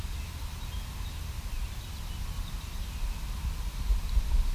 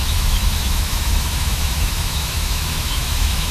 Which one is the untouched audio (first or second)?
first